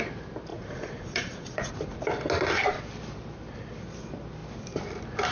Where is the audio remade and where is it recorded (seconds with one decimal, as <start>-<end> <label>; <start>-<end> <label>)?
0.0-0.5 recorded; 0.5-1.7 remade; 1.7-5.3 recorded